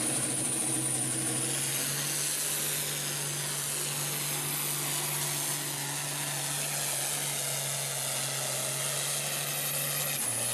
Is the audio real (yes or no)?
yes